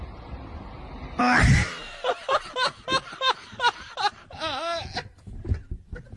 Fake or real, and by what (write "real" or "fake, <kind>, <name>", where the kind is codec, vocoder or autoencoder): real